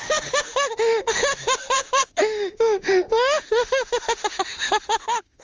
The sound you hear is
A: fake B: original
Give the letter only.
A